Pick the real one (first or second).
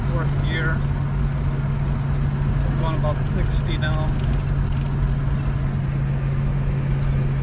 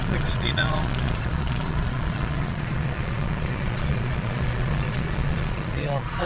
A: first